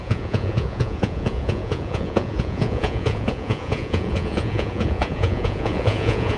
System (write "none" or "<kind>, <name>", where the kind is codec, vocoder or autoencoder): vocoder, Vocos